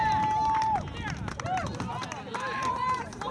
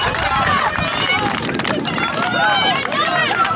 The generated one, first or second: second